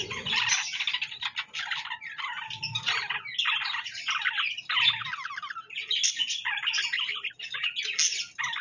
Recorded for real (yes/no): yes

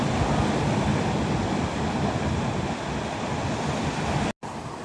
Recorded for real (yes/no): yes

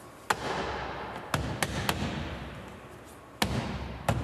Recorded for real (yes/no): yes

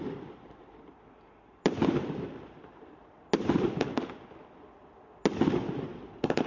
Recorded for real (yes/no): yes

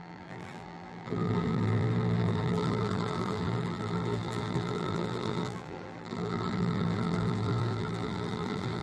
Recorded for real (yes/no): no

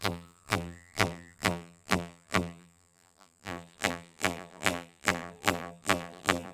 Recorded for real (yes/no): no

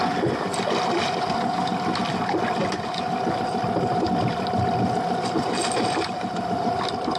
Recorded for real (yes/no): yes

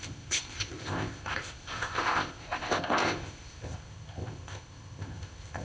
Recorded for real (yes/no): no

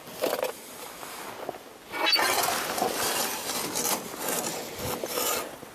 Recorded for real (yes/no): yes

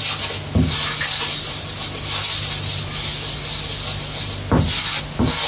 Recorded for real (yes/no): yes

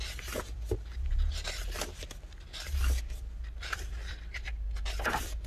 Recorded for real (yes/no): yes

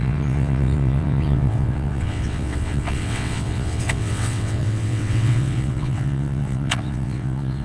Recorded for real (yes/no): no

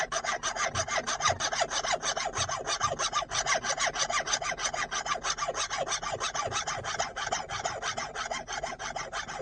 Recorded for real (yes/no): yes